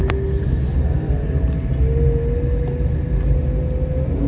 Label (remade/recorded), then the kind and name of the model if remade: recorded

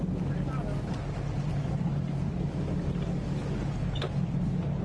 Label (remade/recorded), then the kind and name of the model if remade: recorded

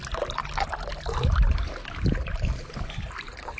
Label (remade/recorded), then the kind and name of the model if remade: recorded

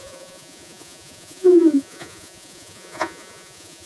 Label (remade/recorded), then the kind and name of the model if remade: remade, vocoder, Vocos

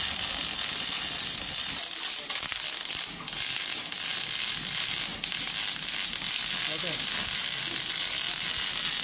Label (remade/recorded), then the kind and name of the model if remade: recorded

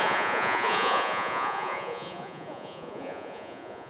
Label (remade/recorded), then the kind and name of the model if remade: remade, vocoder, Vocos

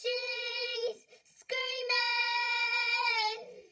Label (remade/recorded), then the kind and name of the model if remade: remade, vocoder, Vocos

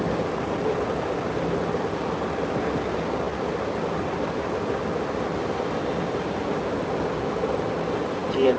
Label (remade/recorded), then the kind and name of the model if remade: recorded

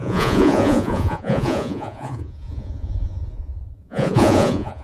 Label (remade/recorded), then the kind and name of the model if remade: remade, vocoder, Vocos